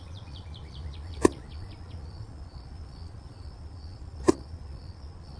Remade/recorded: remade